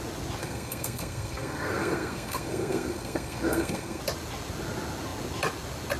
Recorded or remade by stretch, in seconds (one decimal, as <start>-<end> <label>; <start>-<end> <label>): 0.0-0.4 recorded; 0.4-4.0 remade; 4.0-6.0 recorded